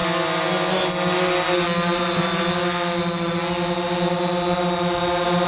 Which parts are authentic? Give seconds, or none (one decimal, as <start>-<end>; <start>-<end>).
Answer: 0.0-5.5